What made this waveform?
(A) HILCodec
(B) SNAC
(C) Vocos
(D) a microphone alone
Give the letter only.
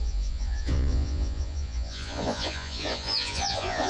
C